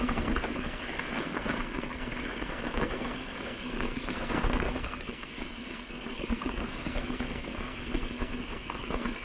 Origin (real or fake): fake